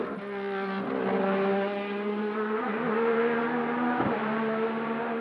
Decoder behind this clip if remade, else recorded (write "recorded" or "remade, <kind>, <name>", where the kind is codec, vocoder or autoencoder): recorded